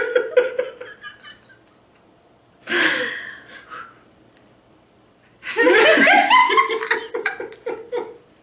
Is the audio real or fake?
fake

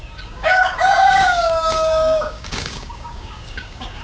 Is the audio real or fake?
fake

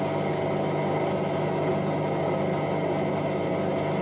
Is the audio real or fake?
real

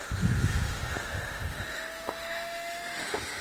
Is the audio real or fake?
fake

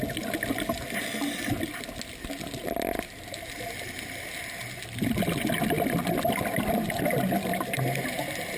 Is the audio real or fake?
real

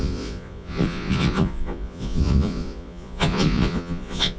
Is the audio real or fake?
fake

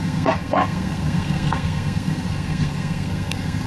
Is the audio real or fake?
fake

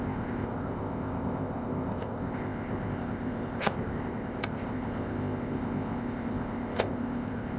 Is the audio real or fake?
fake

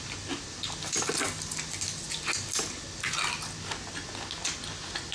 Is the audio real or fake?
real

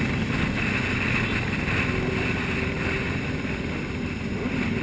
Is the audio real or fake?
real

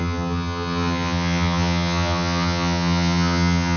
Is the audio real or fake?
fake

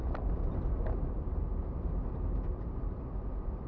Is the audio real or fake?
real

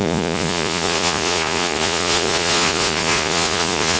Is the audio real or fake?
fake